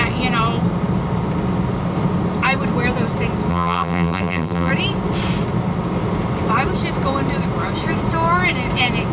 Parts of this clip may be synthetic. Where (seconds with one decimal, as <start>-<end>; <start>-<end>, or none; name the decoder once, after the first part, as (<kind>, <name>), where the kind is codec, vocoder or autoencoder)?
3.5-4.7 (vocoder, BigVGAN v2)